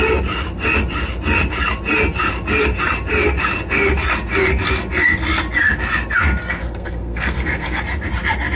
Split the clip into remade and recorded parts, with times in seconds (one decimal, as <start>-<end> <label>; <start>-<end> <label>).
0.0-6.6 recorded; 6.6-7.8 remade; 7.8-8.6 recorded